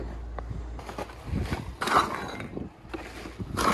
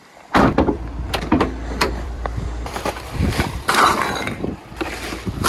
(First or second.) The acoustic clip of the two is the first